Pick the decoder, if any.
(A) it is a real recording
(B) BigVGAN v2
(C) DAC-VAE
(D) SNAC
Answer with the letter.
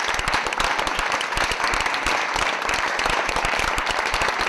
A